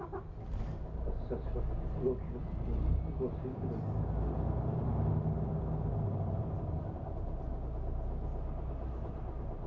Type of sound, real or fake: real